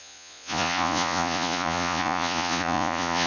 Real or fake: fake